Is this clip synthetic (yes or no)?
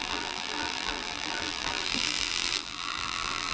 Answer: yes